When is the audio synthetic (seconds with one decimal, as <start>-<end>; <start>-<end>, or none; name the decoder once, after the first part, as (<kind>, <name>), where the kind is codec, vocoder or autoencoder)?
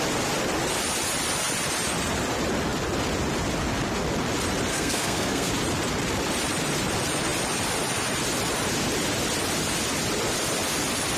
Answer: 4.7-5.5 (codec, SNAC)